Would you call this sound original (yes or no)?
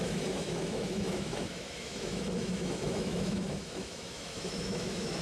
no